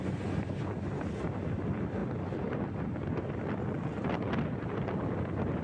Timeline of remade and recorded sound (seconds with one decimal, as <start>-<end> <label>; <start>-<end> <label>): 0.0-5.6 recorded